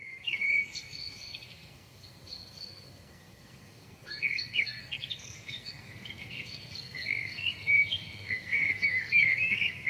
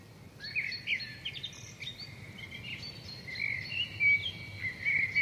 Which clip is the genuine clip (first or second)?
second